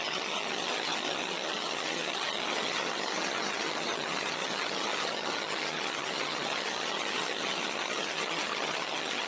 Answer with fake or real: fake